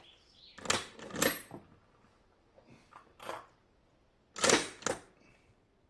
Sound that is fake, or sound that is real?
real